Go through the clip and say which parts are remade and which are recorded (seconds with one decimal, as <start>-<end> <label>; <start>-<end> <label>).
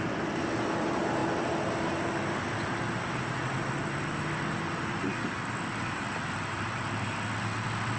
0.0-8.0 recorded